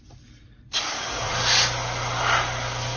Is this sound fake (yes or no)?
no